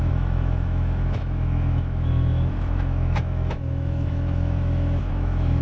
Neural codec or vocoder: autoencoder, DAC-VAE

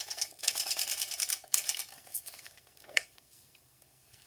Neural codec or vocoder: codec, SNAC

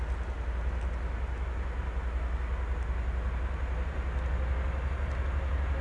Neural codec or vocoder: none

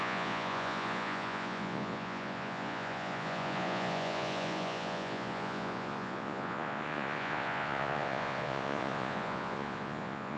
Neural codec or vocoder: vocoder, Vocos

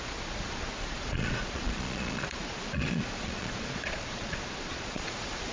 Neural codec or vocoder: vocoder, Vocos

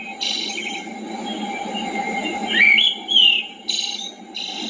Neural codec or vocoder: none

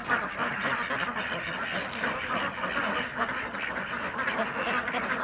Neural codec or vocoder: none